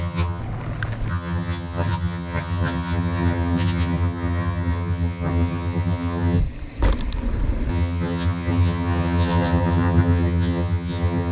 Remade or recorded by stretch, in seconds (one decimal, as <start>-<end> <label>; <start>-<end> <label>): 0.0-0.4 remade; 0.4-1.1 recorded; 1.1-6.4 remade; 6.4-7.7 recorded; 7.7-11.3 remade

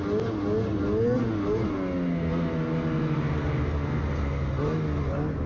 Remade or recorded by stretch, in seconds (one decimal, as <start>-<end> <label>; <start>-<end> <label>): 0.0-5.5 recorded

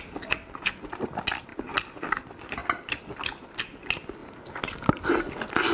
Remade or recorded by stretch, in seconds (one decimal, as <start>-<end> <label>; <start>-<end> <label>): 0.0-5.7 recorded

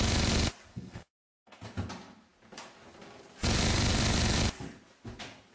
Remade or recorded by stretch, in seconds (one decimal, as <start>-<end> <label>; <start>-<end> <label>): 0.0-0.7 recorded; 0.7-1.6 remade; 1.6-5.5 recorded

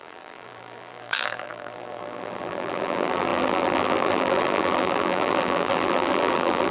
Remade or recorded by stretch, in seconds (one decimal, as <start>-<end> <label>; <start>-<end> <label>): 0.0-6.7 remade